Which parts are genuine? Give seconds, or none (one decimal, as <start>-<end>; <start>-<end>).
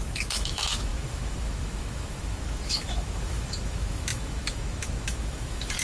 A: none